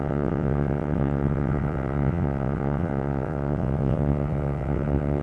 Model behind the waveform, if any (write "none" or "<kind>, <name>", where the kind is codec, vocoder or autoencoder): vocoder, WaveNeXt